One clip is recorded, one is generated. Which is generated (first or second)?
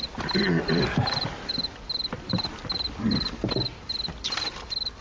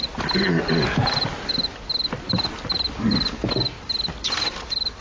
first